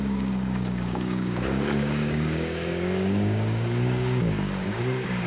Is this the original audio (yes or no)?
no